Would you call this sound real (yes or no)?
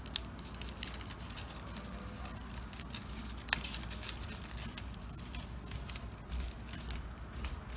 yes